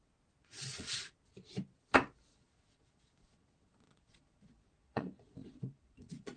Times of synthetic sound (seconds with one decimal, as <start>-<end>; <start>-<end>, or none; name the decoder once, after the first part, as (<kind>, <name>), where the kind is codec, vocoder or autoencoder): 0.4-1.1 (vocoder, Vocos); 2.3-6.4